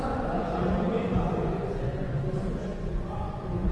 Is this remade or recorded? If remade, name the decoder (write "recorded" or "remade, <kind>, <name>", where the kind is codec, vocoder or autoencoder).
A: remade, vocoder, Vocos